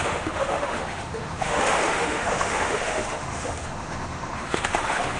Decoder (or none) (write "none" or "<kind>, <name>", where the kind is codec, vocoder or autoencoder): autoencoder, DAC-VAE